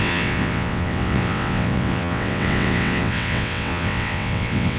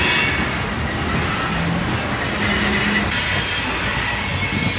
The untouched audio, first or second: second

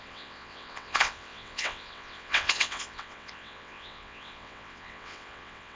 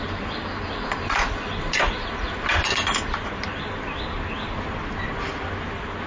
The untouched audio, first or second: second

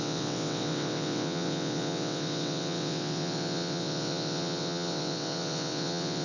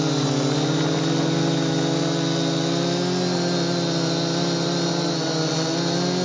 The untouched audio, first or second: second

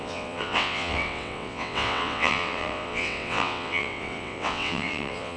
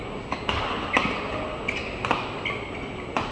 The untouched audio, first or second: second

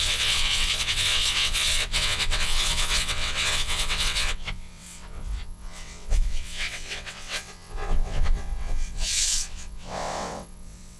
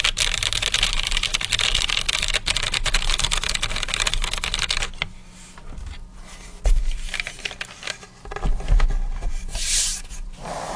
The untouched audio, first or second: second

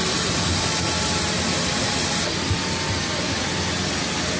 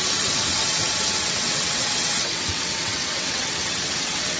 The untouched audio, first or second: first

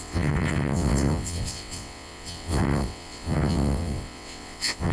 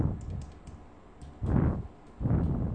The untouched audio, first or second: second